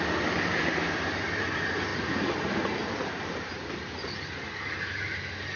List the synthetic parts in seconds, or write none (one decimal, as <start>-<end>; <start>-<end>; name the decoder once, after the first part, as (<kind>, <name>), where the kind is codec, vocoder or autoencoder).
0.5-1.4 (vocoder, BigVGAN v2); 1.9-5.6